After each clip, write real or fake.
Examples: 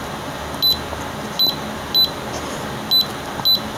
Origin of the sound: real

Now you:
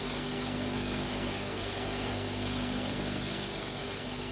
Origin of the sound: fake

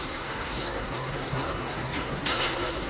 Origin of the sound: fake